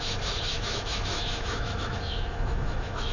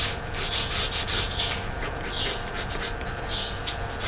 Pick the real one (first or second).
second